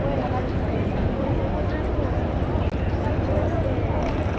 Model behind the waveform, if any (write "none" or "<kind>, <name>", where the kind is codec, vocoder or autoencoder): none